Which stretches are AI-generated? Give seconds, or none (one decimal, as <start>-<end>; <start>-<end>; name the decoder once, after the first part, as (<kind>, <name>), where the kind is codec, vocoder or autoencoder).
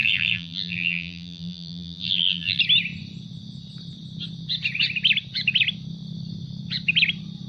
0.0-2.6 (vocoder, BigVGAN v2)